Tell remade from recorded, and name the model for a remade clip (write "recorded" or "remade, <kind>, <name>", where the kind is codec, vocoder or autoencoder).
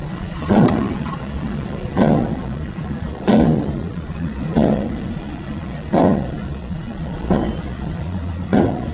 remade, vocoder, Vocos